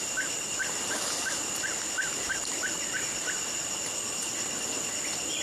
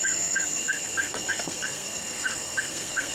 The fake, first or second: second